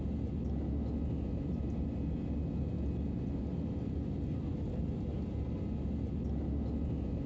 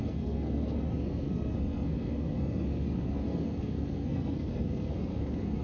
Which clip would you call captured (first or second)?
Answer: first